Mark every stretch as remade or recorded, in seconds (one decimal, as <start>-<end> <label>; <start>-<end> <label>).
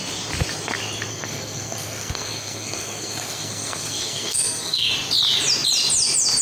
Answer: 0.0-1.1 recorded; 1.1-4.9 remade; 4.9-6.4 recorded